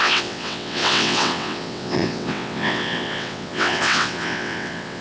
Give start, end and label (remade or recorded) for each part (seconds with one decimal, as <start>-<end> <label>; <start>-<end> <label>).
0.0-5.0 remade